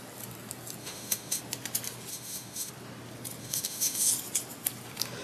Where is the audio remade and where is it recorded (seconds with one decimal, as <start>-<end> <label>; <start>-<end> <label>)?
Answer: 0.0-0.8 recorded; 0.8-1.4 remade; 1.4-2.1 recorded; 2.1-2.7 remade; 2.7-3.4 recorded; 3.4-4.1 remade; 4.1-5.2 recorded

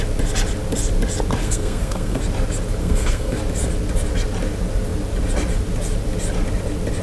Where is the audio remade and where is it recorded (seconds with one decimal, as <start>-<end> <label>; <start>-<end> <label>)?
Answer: 0.0-1.4 recorded; 1.4-2.2 remade; 2.2-2.8 recorded; 2.8-3.4 remade; 3.4-7.0 recorded

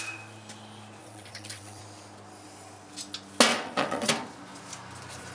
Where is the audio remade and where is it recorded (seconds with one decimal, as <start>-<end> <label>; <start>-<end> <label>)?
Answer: 0.0-1.0 recorded; 1.0-1.8 remade; 1.8-3.5 recorded; 3.5-4.1 remade; 4.1-5.3 recorded

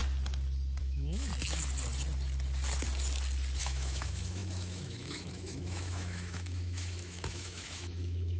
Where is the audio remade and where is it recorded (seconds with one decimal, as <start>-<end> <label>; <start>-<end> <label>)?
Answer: 0.0-0.8 recorded; 0.8-1.3 remade; 1.3-3.6 recorded; 3.6-8.4 remade